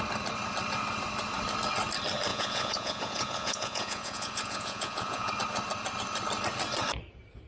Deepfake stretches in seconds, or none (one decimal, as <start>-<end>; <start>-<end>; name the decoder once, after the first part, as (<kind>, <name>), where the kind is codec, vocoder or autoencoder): 2.3-5.3 (vocoder, Vocos)